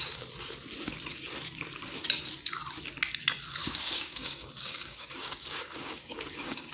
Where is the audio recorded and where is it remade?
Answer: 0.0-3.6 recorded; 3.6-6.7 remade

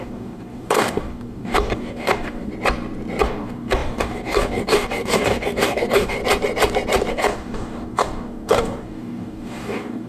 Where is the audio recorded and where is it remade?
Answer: 0.0-2.5 remade; 2.5-3.2 recorded; 3.2-6.2 remade; 6.2-7.1 recorded; 7.1-10.1 remade

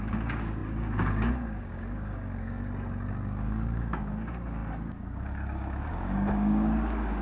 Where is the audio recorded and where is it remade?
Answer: 0.0-2.6 remade; 2.6-3.1 recorded; 3.1-7.2 remade

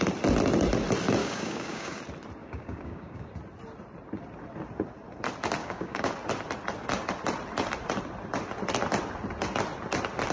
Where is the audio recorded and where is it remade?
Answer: 0.0-1.2 recorded; 1.2-2.0 remade; 2.0-2.4 recorded; 2.4-3.3 remade; 3.3-5.6 recorded; 5.6-6.1 remade; 6.1-10.3 recorded

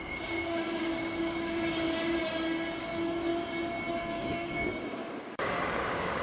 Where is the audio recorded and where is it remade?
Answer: 0.0-2.2 remade; 2.2-2.8 recorded; 2.8-3.3 remade; 3.3-3.9 recorded; 3.9-6.2 remade

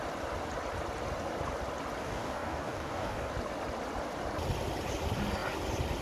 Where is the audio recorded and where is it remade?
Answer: 0.0-2.0 recorded; 2.0-3.3 remade; 3.3-6.0 recorded

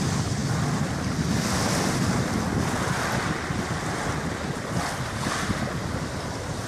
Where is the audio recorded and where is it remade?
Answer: 0.0-6.7 recorded